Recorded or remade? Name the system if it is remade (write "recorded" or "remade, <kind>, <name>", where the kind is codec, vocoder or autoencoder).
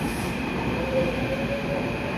remade, vocoder, BigVGAN v2